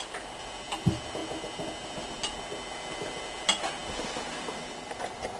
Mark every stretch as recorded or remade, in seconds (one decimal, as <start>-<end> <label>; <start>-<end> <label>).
0.0-5.4 recorded